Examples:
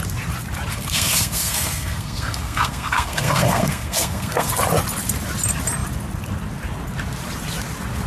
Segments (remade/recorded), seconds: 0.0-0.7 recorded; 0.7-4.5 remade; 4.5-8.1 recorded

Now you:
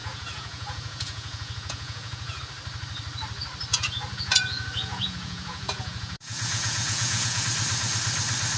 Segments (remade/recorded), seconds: 0.0-2.4 remade; 2.4-3.7 recorded; 3.7-7.4 remade; 7.4-8.6 recorded